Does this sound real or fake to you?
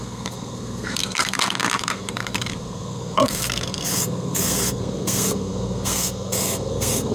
fake